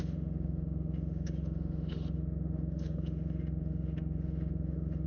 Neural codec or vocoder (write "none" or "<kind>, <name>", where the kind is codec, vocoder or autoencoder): autoencoder, DAC-VAE